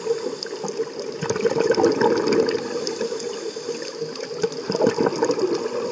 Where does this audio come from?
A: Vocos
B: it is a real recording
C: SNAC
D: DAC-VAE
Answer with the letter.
B